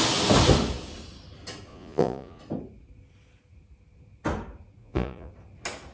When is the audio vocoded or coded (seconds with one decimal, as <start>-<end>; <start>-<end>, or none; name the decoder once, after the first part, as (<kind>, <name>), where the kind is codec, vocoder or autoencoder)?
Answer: 1.7-2.4 (vocoder, Vocos); 4.8-5.3